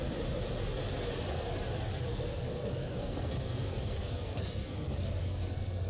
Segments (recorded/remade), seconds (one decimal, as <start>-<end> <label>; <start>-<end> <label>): 0.0-2.1 recorded; 2.1-5.9 remade